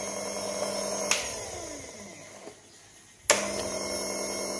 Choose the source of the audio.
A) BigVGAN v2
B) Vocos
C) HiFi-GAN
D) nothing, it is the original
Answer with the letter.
D